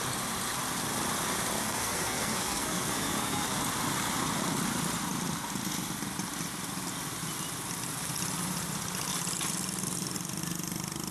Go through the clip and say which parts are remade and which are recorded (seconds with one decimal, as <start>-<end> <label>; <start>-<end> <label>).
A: 0.0-1.6 recorded; 1.6-3.6 remade; 3.6-11.1 recorded